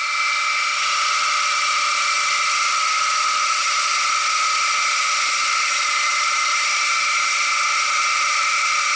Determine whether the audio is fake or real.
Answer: real